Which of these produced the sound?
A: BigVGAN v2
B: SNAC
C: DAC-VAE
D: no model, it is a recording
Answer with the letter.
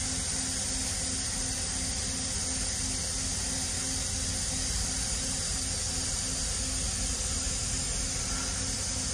D